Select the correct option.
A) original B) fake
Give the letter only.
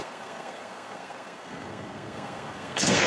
B